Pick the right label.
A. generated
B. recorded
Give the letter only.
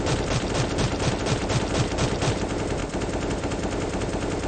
B